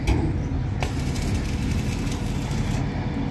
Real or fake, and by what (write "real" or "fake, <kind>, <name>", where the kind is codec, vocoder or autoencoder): real